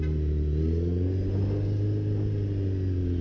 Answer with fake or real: real